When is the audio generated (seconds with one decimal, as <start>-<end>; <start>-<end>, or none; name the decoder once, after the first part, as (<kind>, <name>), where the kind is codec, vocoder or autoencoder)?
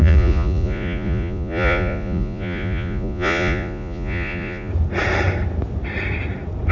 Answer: 0.0-4.7 (vocoder, Vocos)